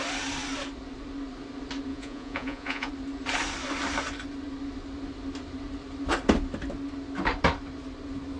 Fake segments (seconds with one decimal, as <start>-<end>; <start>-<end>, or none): 1.9-2.9